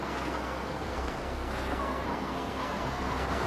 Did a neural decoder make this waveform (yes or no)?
yes